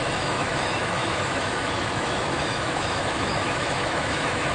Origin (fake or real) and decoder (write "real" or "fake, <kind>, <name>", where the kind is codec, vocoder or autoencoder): fake, autoencoder, DAC-VAE